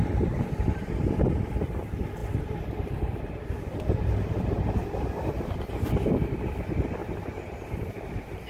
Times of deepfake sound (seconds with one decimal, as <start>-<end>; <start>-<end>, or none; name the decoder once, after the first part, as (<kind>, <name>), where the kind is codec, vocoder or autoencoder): 7.0-8.5 (vocoder, BigVGAN v2)